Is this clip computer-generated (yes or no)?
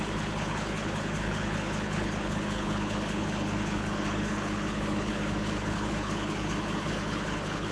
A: yes